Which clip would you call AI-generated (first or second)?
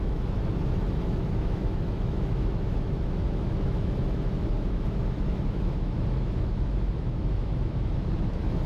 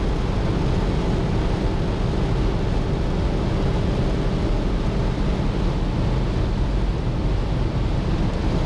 first